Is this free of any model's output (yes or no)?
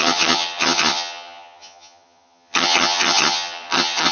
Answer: no